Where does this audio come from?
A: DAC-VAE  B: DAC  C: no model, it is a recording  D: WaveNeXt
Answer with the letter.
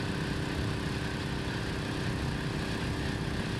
C